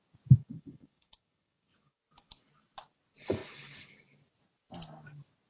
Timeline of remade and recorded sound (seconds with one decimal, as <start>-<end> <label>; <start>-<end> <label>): 0.0-0.4 recorded; 0.4-2.0 remade; 2.0-5.5 recorded